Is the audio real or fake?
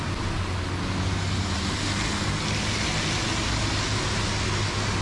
real